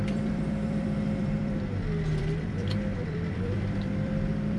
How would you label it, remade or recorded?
remade